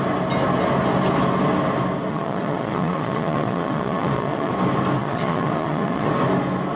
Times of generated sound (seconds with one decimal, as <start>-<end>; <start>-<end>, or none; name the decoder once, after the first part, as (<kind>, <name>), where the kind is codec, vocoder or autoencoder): 2.1-4.5 (vocoder, Vocos); 5.0-6.1